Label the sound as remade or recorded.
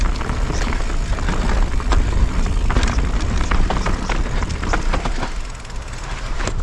recorded